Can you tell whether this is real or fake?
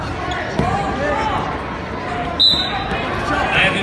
real